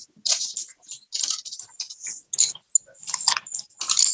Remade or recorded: recorded